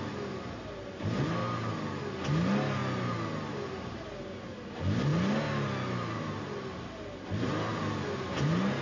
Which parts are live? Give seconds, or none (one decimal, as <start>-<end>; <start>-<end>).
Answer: 0.0-8.8